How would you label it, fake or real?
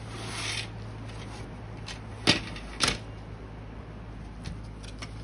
real